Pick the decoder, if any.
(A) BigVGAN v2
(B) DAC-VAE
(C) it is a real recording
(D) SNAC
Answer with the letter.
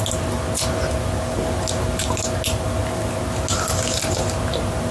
C